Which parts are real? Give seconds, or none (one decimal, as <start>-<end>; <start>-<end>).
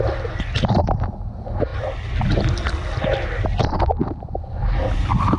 0.0-5.4